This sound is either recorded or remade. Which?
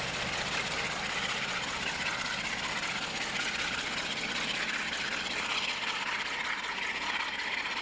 recorded